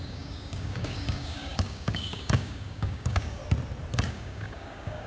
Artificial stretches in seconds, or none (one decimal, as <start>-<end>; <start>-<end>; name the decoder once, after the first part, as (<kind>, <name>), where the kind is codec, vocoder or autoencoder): 0.0-3.4 (codec, DAC); 4.1-5.1